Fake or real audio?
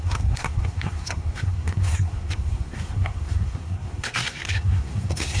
fake